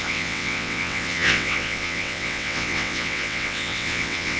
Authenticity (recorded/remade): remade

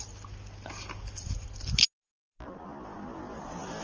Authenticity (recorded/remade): recorded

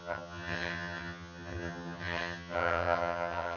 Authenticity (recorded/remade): remade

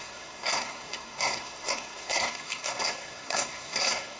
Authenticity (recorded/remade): remade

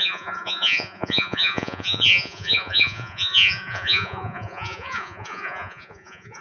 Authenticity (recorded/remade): remade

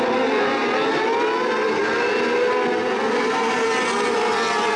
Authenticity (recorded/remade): recorded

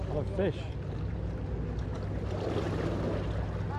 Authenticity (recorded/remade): recorded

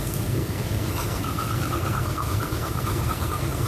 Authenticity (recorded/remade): remade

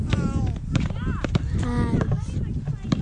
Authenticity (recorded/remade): recorded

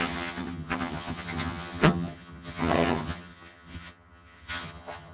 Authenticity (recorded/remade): remade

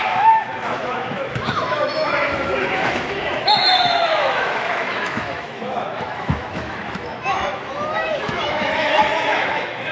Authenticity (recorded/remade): remade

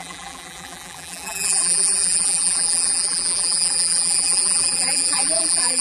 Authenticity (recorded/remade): remade